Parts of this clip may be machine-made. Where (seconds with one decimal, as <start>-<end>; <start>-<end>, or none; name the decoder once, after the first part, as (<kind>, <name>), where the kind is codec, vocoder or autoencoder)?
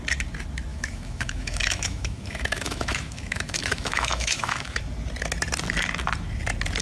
0.7-4.8 (autoencoder, DAC-VAE)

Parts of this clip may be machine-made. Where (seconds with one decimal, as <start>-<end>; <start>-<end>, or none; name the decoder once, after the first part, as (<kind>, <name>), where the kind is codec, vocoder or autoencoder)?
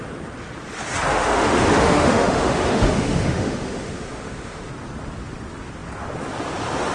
1.1-4.7 (autoencoder, DAC-VAE)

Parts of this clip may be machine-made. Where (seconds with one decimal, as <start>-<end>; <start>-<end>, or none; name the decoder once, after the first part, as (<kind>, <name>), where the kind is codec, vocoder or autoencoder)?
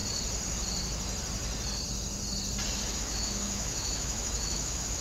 3.0-5.0 (autoencoder, DAC-VAE)